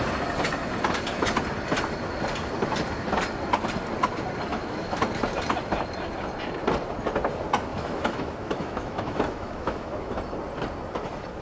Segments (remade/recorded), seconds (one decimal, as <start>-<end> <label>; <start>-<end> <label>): 0.0-4.5 recorded; 4.5-5.1 remade; 5.1-7.7 recorded; 7.7-10.2 remade; 10.2-11.4 recorded